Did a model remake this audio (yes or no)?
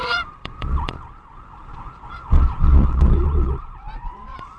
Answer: yes